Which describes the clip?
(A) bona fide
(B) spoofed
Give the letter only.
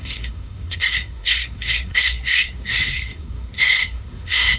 B